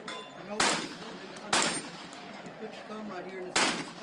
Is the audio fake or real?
real